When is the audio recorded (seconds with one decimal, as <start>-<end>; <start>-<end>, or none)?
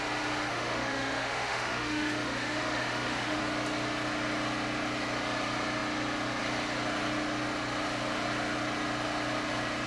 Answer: 0.0-0.5; 3.4-9.9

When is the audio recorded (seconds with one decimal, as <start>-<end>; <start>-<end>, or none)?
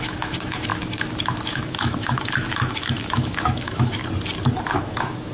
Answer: 4.0-4.6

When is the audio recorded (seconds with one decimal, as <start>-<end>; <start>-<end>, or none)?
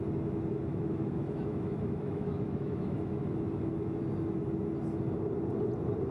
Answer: 0.0-0.7; 4.0-6.1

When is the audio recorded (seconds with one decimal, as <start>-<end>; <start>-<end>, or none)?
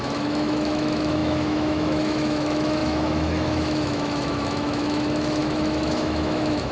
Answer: none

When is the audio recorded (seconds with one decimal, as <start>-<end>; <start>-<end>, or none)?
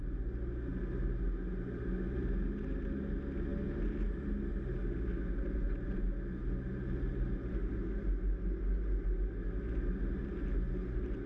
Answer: 0.0-11.3